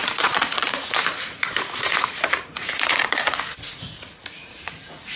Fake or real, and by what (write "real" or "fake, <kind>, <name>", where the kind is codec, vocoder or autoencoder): fake, vocoder, Vocos